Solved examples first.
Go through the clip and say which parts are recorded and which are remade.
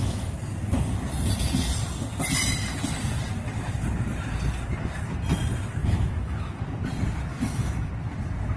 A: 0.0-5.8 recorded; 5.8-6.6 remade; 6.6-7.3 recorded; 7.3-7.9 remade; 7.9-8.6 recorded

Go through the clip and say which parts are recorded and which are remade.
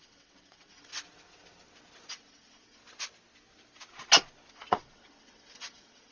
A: 0.0-0.9 remade; 0.9-2.1 recorded; 2.1-2.8 remade; 2.8-4.5 recorded; 4.5-6.1 remade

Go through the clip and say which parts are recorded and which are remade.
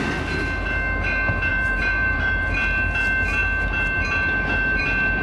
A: 0.0-1.5 recorded; 1.5-2.4 remade; 2.4-5.2 recorded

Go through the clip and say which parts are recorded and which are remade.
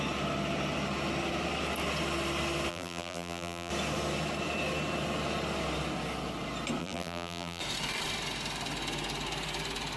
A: 0.0-2.7 recorded; 2.7-3.7 remade; 3.7-6.8 recorded; 6.8-7.6 remade; 7.6-10.0 recorded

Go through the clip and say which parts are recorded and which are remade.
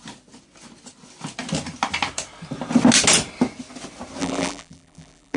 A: 0.0-4.2 recorded; 4.2-5.4 remade